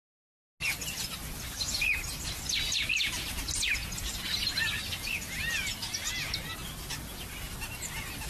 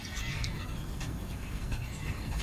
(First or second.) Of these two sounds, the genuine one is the first